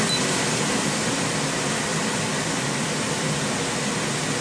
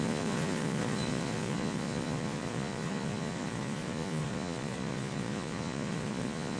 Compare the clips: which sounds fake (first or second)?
second